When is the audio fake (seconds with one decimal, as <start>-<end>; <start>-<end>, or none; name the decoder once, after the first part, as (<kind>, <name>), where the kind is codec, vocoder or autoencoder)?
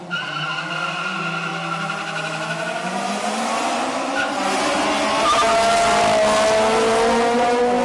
none